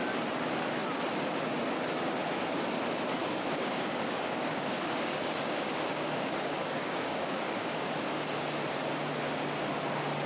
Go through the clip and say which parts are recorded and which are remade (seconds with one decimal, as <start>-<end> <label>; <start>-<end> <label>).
0.0-3.2 recorded; 3.2-7.9 remade; 7.9-10.3 recorded